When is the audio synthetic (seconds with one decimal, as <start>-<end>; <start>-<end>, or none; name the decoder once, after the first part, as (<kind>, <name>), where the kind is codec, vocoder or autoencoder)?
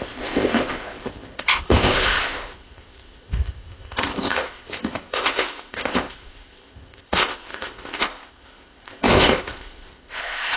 0.0-10.6 (codec, ZipCodec)